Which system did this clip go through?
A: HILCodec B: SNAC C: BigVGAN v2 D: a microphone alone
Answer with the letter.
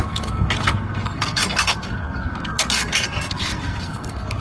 B